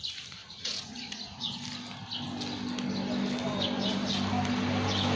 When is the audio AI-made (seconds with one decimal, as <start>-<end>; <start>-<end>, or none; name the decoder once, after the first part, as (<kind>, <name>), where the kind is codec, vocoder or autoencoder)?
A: 0.4-1.4 (vocoder, Vocos)